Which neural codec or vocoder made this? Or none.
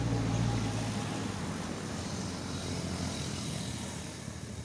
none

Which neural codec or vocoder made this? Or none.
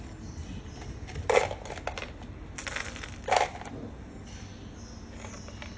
none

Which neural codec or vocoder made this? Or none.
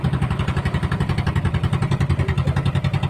none